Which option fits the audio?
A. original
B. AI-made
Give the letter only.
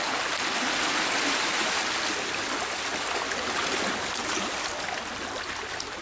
A